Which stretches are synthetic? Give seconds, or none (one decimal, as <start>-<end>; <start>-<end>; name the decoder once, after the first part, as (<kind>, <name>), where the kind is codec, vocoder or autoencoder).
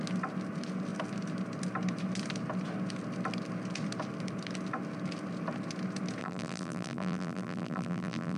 6.2-8.4 (vocoder, BigVGAN v2)